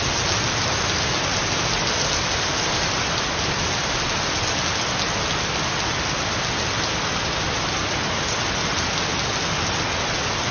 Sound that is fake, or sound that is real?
real